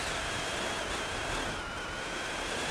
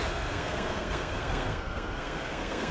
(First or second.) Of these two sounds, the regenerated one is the second